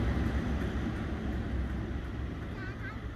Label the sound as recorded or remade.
recorded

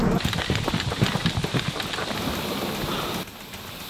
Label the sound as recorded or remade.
recorded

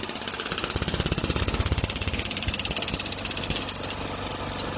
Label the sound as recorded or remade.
recorded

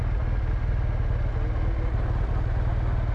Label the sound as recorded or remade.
recorded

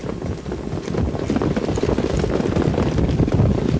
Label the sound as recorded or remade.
recorded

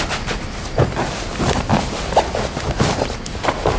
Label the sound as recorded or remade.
recorded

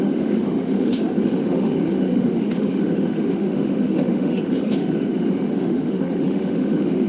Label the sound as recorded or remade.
remade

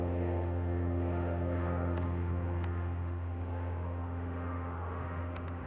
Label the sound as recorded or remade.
remade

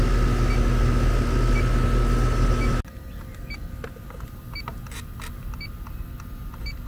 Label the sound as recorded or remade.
recorded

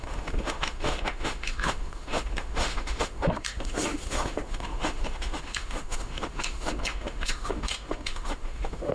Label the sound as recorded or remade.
remade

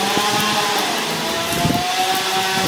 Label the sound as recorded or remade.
recorded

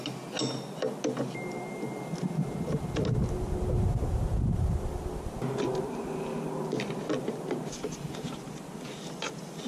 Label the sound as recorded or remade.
recorded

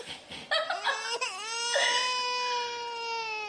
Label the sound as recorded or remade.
recorded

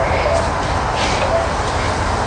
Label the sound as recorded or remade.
recorded